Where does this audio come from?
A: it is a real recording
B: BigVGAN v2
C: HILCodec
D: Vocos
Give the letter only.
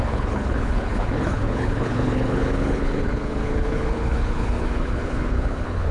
C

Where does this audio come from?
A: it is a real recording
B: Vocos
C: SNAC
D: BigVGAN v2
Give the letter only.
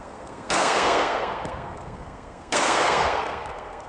C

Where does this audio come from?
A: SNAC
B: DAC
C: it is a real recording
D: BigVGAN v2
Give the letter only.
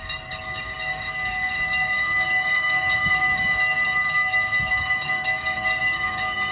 B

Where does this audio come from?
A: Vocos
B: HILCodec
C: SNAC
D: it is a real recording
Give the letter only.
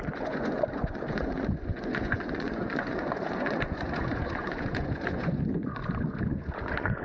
A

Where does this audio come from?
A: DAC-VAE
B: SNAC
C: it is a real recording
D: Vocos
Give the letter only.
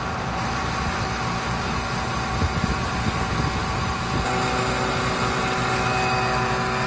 C